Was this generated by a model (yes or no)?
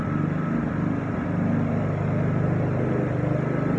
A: no